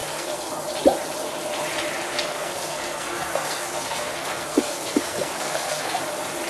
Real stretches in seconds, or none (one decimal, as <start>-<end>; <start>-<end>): 0.5-2.1; 6.0-6.5